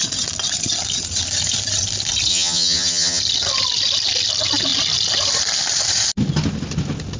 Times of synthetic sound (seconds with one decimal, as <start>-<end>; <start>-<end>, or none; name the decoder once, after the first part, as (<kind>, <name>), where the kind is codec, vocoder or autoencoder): 2.3-3.2 (vocoder, HiFi-GAN)